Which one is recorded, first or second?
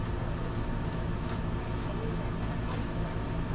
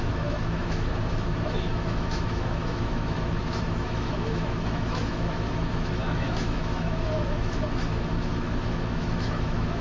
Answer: first